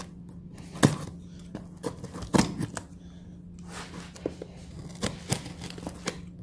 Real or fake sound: real